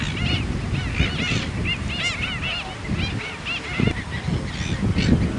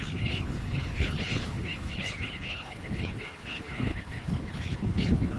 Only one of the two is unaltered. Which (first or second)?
first